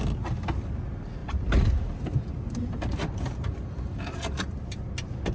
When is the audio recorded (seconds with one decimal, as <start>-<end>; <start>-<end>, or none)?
0.0-1.2; 2.0-5.3

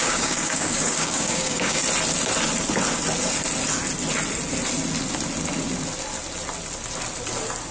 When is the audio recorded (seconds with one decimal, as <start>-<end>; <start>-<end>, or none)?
1.8-7.7

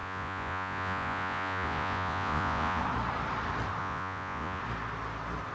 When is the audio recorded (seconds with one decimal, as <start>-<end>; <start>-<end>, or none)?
2.8-3.8; 4.6-5.5